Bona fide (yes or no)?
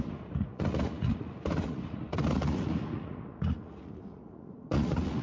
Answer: no